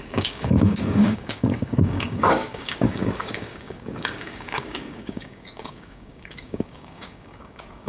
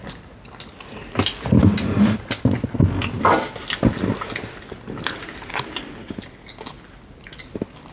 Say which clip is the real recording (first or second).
second